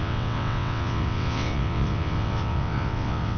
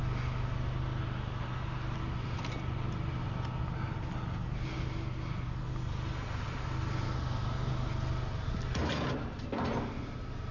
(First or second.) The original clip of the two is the second